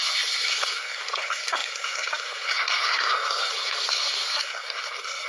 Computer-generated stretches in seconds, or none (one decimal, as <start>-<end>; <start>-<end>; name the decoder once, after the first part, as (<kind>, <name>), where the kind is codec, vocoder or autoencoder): 0.0-5.3 (codec, SNAC)